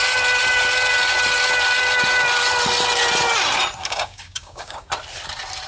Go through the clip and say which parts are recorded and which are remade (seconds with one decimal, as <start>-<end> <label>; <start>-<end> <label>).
0.0-3.8 recorded; 3.8-4.9 remade; 4.9-5.7 recorded

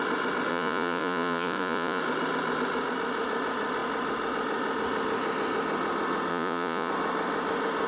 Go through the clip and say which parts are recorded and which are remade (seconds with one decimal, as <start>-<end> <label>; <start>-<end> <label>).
0.0-0.5 recorded; 0.5-2.0 remade; 2.0-6.3 recorded; 6.3-6.9 remade; 6.9-7.9 recorded